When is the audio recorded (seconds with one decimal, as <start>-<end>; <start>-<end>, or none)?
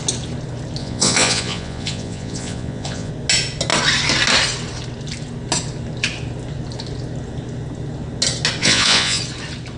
0.0-0.8; 3.1-8.6; 9.2-9.8